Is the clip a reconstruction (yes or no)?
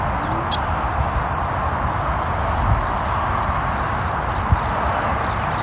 no